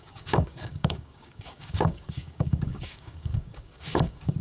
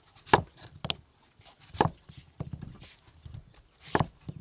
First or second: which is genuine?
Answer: second